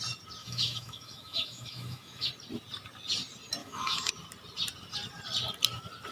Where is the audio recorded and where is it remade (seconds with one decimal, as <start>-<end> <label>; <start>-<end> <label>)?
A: 0.0-0.4 recorded; 0.4-2.3 remade; 2.3-3.6 recorded; 3.6-4.1 remade; 4.1-6.1 recorded